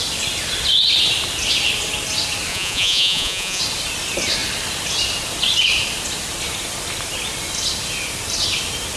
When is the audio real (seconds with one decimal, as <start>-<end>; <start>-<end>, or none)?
0.0-2.5; 3.6-9.0